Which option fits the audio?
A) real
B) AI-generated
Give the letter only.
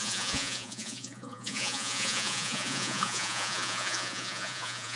B